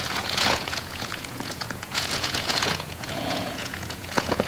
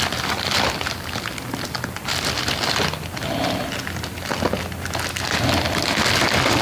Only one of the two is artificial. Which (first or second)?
first